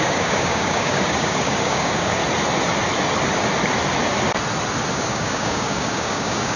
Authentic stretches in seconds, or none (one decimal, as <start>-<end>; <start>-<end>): 2.2-4.9